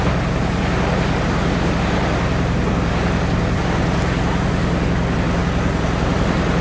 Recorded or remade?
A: recorded